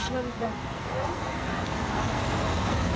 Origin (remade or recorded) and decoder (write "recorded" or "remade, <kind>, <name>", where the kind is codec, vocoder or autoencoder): remade, codec, SNAC